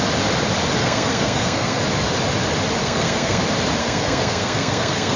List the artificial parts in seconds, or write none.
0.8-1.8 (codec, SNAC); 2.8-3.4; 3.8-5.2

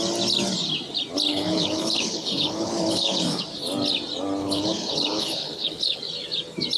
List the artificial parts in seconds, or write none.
1.3-3.4 (codec, HILCodec); 4.4-6.0

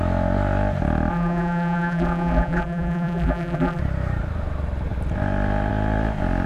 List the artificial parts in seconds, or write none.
1.1-3.8 (vocoder, BigVGAN v2)

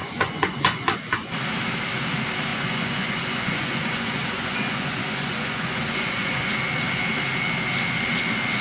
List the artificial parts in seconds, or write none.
0.0-1.3 (vocoder, Vocos); 2.5-6.5